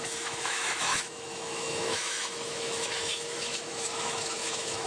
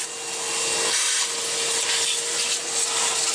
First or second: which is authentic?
second